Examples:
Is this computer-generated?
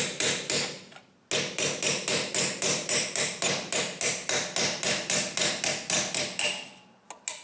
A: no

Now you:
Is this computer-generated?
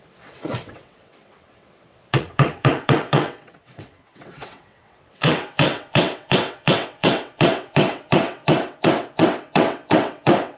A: yes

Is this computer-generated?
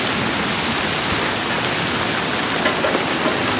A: no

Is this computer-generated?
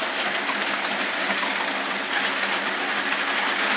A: no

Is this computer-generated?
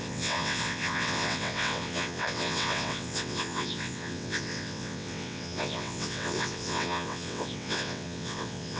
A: yes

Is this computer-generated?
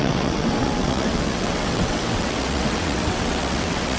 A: yes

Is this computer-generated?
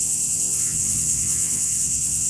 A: yes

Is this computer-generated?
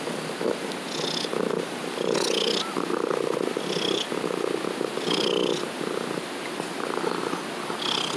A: no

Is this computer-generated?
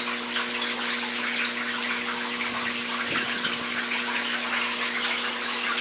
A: no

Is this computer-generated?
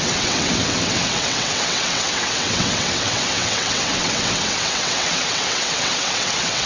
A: yes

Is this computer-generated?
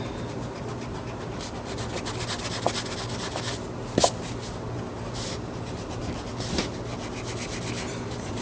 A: no